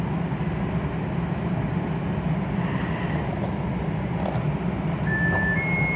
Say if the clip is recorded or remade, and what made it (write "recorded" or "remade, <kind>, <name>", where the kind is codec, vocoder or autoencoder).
recorded